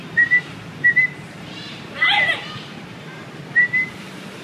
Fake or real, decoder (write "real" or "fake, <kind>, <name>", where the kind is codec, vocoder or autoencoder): fake, vocoder, BigVGAN v2